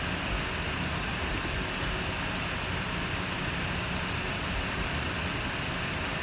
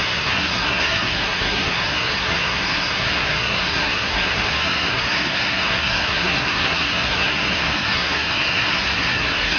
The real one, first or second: first